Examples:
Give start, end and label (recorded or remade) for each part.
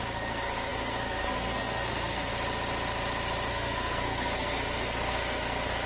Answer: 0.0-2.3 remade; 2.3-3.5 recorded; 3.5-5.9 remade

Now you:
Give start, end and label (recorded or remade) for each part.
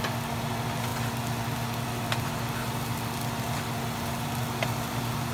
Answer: 0.0-5.3 recorded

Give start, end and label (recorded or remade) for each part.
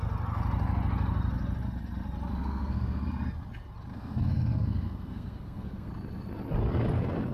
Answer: 0.0-2.3 recorded; 2.3-3.0 remade; 3.0-3.9 recorded; 3.9-5.9 remade; 5.9-7.3 recorded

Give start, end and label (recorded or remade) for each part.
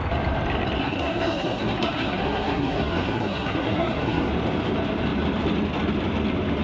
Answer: 0.0-0.8 recorded; 0.8-4.3 remade; 4.3-6.6 recorded